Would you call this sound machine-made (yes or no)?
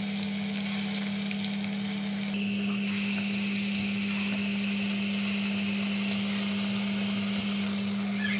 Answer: no